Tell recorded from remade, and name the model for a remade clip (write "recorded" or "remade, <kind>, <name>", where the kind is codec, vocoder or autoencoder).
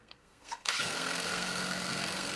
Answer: remade, codec, SNAC